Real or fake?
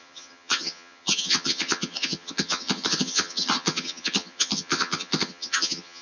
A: fake